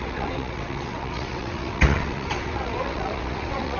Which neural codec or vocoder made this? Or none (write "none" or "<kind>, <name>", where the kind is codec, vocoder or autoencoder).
vocoder, WaveNeXt